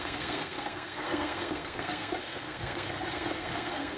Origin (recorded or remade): remade